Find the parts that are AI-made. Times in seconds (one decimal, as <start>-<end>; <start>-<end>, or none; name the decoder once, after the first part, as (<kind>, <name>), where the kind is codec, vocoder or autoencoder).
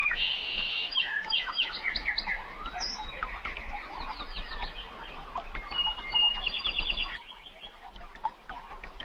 0.0-1.7 (autoencoder, DAC-VAE)